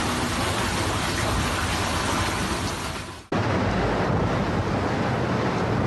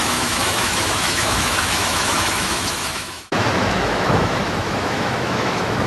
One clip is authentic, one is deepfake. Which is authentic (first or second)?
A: first